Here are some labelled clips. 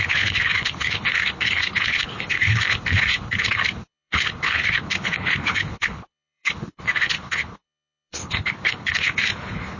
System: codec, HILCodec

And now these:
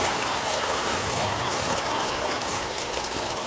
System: codec, SNAC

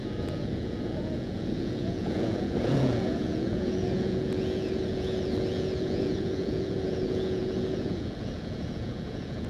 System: vocoder, Vocos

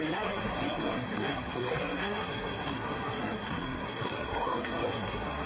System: codec, SNAC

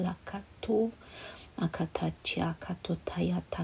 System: none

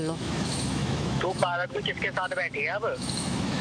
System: autoencoder, DAC-VAE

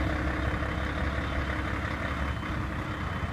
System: none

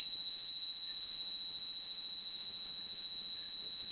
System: autoencoder, DAC-VAE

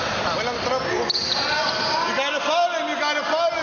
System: none